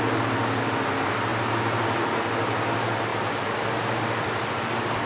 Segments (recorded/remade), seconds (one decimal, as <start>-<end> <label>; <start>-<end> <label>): 0.0-1.3 remade; 1.3-2.3 recorded; 2.3-5.1 remade